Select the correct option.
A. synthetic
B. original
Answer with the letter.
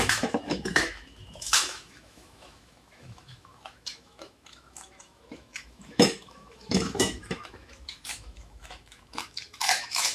A